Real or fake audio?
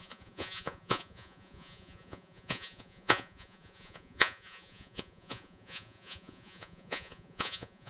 fake